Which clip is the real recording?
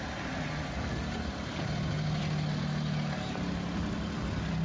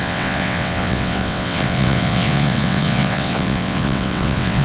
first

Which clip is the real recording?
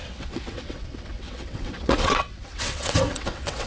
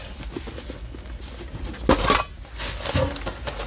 second